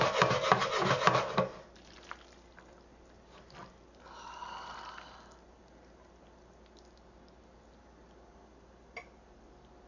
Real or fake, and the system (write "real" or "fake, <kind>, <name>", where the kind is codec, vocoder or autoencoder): real